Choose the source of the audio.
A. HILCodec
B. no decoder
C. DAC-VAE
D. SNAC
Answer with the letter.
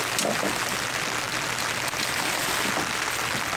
B